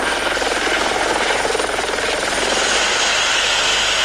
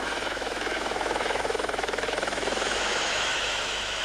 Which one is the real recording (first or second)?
first